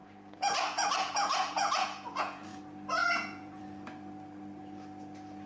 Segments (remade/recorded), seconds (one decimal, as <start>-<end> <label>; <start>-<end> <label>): 0.0-2.6 remade; 2.6-3.0 recorded; 3.0-3.6 remade; 3.6-5.5 recorded